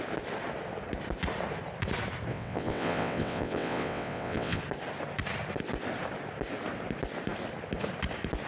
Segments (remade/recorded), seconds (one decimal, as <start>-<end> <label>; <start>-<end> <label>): 0.0-2.3 recorded; 2.3-4.6 remade; 4.6-8.5 recorded

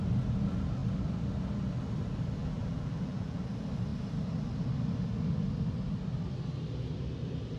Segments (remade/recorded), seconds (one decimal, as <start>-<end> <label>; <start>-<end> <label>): 0.0-2.4 recorded; 2.4-3.4 remade; 3.4-7.6 recorded

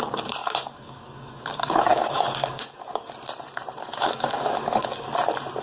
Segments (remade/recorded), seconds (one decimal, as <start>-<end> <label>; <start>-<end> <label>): 0.0-0.4 recorded; 0.4-3.1 remade; 3.1-3.8 recorded; 3.8-5.1 remade; 5.1-5.6 recorded

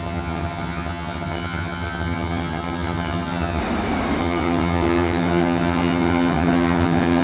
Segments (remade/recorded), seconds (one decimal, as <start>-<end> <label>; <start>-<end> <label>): 0.0-3.6 remade; 3.6-4.2 recorded; 4.2-7.2 remade